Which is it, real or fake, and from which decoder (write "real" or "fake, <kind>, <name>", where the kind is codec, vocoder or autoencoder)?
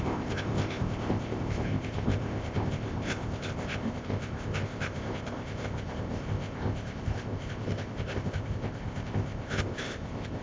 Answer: fake, codec, ZipCodec